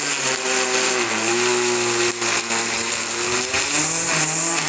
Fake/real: real